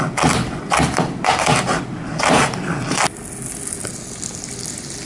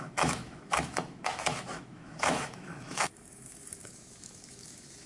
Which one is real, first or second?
first